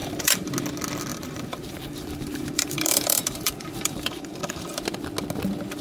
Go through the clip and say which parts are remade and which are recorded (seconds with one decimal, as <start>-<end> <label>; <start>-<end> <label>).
0.0-0.5 remade; 0.5-1.1 recorded; 1.1-4.6 remade; 4.6-5.8 recorded